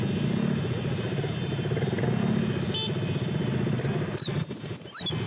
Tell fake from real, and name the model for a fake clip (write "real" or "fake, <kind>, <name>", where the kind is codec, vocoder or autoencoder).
real